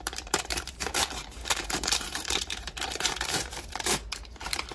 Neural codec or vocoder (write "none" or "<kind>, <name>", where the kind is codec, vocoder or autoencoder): vocoder, BigVGAN v2